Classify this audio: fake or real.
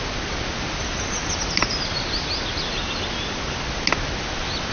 real